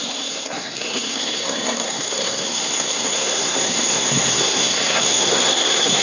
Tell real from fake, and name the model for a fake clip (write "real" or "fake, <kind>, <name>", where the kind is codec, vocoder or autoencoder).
fake, codec, SNAC